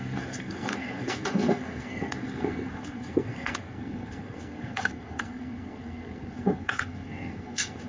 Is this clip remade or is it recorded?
remade